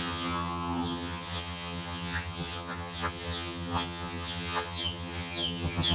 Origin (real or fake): fake